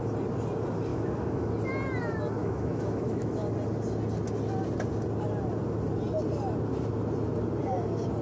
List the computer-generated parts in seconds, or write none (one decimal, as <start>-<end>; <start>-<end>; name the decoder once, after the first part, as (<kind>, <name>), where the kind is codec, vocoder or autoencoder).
0.9-1.5 (autoencoder, DAC-VAE); 2.4-3.4